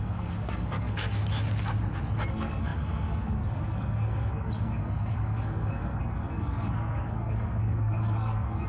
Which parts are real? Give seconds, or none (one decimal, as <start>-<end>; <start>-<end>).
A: 1.2-2.3